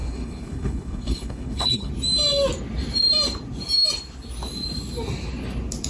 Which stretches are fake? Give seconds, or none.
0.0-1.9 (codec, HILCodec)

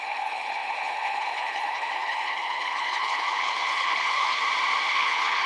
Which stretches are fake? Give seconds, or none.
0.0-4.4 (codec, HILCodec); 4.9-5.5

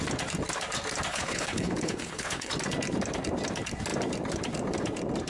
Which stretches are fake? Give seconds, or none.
1.1-2.5 (codec, HILCodec)

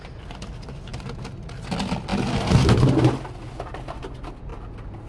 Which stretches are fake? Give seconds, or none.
none